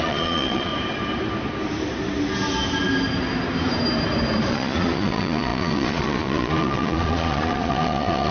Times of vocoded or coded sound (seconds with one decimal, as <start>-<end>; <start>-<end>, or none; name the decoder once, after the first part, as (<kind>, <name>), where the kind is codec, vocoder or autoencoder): 0.0-0.7 (vocoder, Vocos); 4.5-8.3